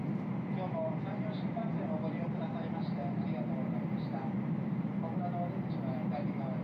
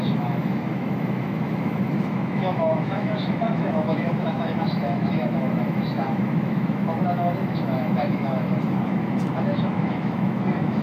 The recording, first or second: first